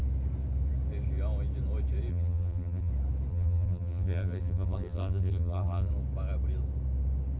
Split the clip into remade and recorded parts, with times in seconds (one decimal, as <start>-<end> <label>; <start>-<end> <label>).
0.0-2.1 recorded; 2.1-2.9 remade; 2.9-3.3 recorded; 3.3-5.9 remade; 5.9-7.4 recorded